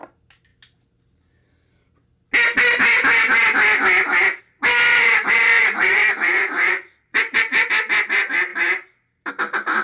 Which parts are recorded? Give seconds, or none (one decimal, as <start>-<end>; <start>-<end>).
0.0-4.9; 7.7-9.8